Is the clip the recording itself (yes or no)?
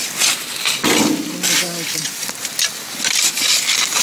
yes